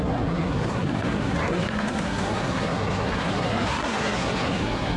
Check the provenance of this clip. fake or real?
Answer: fake